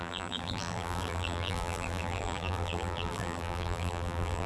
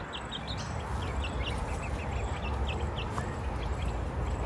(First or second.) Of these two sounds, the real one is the second